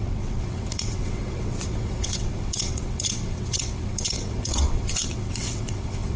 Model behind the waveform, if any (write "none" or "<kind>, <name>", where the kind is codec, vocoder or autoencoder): vocoder, WaveNeXt